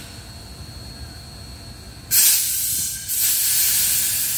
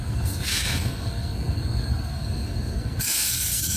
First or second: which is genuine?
first